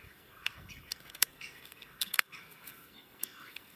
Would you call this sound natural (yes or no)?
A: no